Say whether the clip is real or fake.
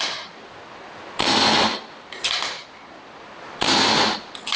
real